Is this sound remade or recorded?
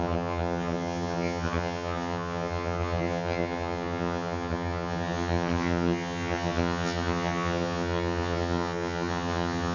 remade